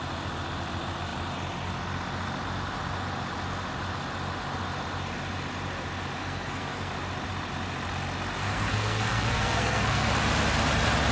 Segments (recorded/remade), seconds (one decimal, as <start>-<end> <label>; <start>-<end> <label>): 0.0-6.2 recorded; 6.2-6.9 remade; 6.9-8.4 recorded; 8.4-10.1 remade; 10.1-11.1 recorded